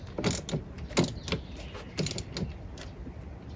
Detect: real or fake real